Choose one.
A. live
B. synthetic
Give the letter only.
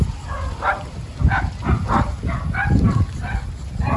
A